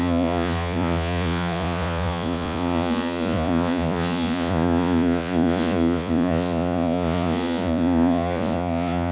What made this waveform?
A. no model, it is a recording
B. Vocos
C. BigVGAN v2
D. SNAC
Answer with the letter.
B